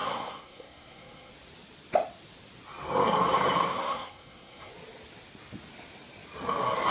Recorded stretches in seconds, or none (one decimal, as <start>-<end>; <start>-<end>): 1.3-3.7; 4.7-6.9